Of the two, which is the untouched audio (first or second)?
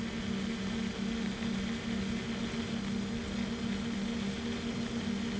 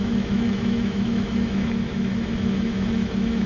first